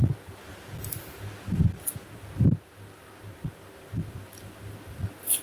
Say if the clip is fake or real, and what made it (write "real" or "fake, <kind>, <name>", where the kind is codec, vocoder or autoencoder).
real